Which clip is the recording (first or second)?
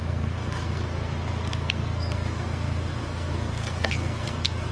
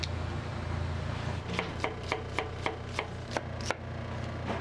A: second